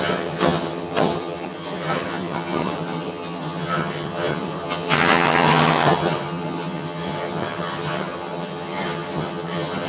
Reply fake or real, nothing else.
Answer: fake